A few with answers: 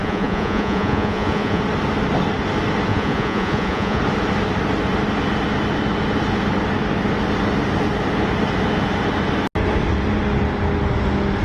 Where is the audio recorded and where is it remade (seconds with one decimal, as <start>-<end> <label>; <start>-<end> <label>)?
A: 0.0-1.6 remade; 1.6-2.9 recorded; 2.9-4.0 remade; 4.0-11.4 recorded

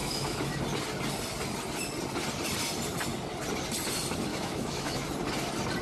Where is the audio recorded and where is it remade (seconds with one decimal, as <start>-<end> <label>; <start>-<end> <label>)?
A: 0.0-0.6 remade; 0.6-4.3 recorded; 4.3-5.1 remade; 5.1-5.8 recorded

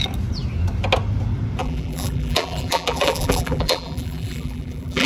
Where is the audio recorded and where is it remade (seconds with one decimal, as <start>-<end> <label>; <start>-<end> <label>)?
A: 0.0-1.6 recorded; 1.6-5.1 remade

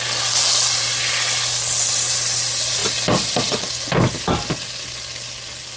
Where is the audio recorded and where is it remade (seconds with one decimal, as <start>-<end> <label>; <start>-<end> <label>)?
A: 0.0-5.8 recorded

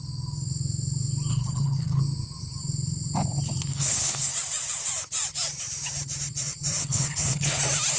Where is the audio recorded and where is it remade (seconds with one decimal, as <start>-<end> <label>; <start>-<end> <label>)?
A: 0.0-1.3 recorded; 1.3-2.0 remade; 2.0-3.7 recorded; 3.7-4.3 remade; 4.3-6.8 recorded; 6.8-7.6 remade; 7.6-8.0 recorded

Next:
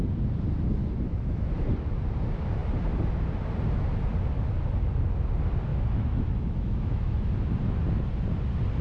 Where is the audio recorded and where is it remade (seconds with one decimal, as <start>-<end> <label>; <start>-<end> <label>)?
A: 0.0-0.8 recorded; 0.8-1.5 remade; 1.5-5.7 recorded; 5.7-7.3 remade; 7.3-8.8 recorded

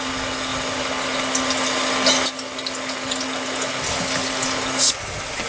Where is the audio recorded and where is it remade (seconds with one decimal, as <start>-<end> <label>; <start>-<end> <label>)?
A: 0.0-5.5 recorded